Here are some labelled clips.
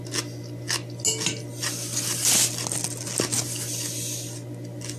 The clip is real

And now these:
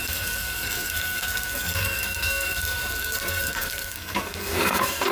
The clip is fake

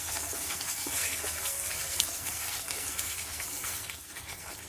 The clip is fake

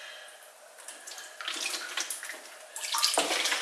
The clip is real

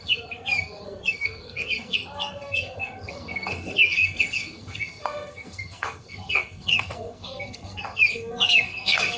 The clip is fake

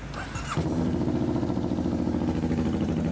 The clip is real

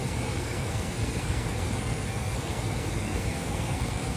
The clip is fake